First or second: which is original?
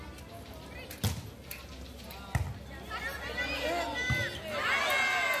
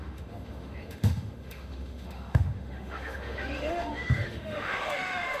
first